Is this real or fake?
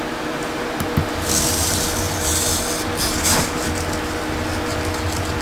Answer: real